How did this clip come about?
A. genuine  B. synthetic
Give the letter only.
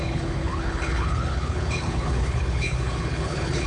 B